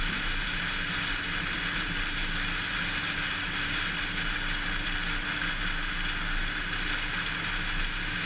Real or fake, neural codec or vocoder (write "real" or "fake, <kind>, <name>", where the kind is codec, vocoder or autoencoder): real